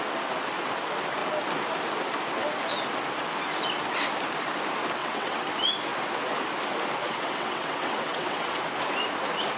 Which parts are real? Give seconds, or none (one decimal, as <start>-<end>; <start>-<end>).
0.0-5.0; 5.5-7.0; 8.6-9.6